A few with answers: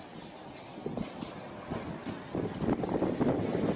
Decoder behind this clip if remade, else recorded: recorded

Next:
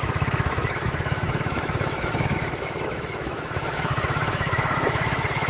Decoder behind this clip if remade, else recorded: remade, autoencoder, DAC-VAE